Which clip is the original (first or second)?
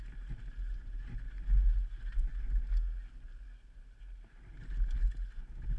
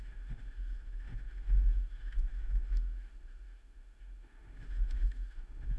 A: first